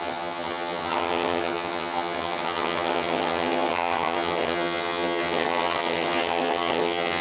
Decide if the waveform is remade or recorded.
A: remade